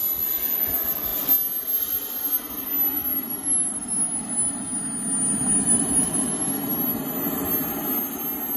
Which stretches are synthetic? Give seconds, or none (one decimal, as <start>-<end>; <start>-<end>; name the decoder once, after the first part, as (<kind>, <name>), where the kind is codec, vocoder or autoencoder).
none